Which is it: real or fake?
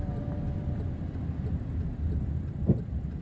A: real